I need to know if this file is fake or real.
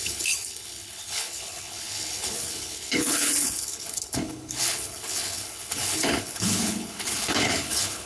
fake